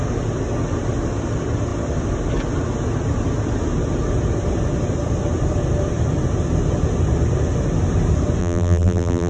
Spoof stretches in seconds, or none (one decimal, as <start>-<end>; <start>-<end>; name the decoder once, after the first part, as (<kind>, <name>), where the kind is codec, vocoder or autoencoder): 8.4-9.3 (vocoder, BigVGAN v2)